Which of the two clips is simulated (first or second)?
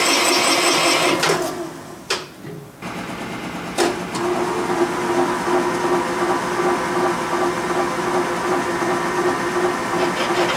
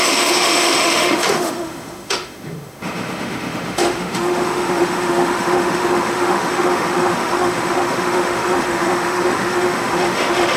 second